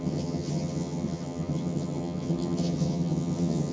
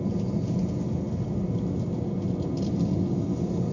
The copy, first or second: first